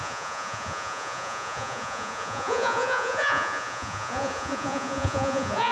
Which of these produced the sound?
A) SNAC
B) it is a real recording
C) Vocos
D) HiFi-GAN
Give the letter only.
C